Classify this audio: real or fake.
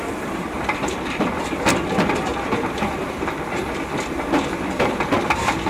fake